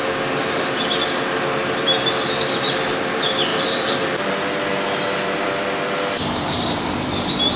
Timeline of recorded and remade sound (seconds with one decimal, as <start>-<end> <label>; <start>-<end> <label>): 0.0-1.7 recorded; 1.7-7.6 remade